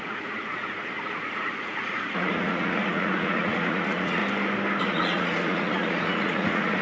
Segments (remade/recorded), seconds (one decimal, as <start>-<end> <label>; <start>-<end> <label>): 0.0-4.2 remade; 4.2-4.8 recorded; 4.8-6.8 remade